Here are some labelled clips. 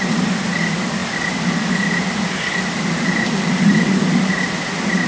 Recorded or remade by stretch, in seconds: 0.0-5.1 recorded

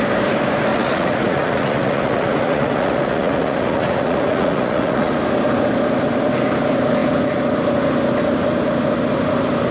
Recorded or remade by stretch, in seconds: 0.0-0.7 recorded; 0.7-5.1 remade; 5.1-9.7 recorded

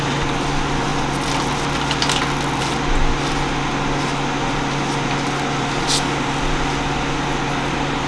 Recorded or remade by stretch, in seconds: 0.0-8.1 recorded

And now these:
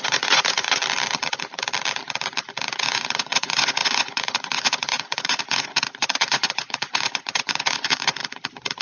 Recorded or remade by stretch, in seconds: 0.0-0.8 remade; 0.8-2.8 recorded; 2.8-8.2 remade; 8.2-8.8 recorded

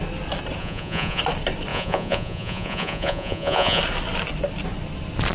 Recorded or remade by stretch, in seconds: 0.0-0.6 recorded; 0.6-1.2 remade; 1.2-1.7 recorded; 1.7-3.8 remade; 3.8-5.3 recorded